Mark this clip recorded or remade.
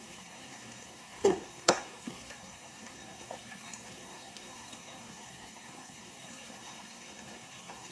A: remade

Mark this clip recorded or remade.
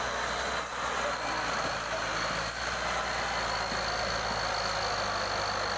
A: recorded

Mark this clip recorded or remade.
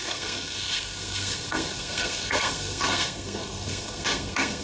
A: remade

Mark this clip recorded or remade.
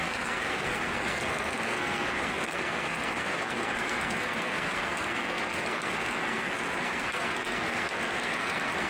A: remade